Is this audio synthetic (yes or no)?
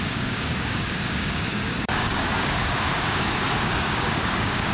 yes